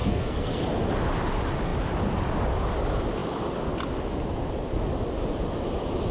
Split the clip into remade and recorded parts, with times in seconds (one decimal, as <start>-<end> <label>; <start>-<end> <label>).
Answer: 0.0-0.6 remade; 0.6-6.1 recorded